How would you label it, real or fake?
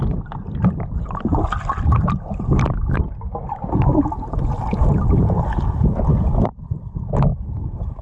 real